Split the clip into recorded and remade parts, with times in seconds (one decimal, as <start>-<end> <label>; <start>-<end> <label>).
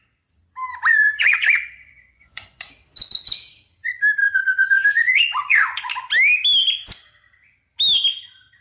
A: 0.0-0.9 recorded; 0.9-2.6 remade; 2.6-4.2 recorded; 4.2-5.9 remade; 5.9-8.6 recorded